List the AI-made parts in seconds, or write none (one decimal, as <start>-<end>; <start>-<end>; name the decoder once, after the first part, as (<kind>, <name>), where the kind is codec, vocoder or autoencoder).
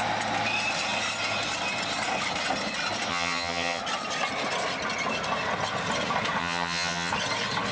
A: 3.1-3.8 (vocoder, HiFi-GAN); 6.4-7.1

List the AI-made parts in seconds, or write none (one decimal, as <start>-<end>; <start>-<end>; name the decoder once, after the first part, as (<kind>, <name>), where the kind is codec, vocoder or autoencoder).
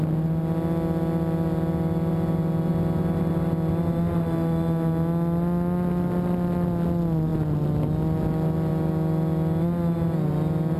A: none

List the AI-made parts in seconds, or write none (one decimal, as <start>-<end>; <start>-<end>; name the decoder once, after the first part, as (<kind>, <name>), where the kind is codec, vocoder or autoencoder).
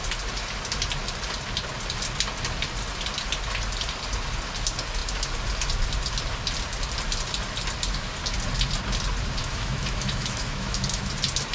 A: 9.4-11.1 (autoencoder, DAC-VAE)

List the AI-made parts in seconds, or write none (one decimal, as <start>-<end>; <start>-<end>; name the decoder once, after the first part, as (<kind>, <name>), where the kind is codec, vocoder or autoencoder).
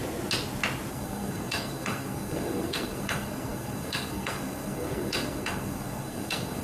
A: 0.9-6.6 (codec, SNAC)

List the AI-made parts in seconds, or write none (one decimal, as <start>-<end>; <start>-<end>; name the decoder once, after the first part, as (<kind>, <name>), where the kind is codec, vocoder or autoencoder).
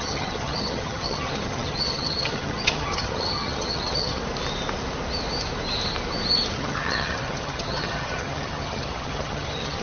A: 0.0-4.2 (vocoder, HiFi-GAN); 6.5-9.8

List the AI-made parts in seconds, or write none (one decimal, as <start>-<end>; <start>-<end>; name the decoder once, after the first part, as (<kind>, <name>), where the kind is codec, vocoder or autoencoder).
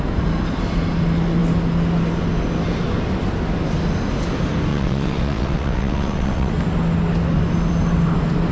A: 4.7-6.5 (vocoder, WaveNeXt)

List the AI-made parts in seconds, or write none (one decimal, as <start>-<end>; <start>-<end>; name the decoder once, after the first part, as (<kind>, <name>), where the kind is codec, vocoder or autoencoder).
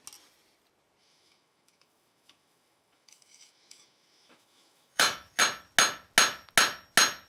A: 1.0-5.4 (autoencoder, DAC-VAE)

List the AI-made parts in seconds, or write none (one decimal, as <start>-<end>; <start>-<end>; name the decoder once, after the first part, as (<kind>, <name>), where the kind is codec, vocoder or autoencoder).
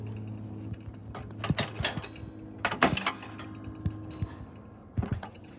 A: 4.8-5.6 (vocoder, WaveNeXt)